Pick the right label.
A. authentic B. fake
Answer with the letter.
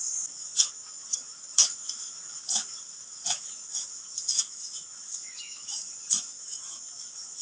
B